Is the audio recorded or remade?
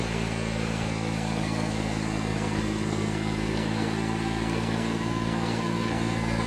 remade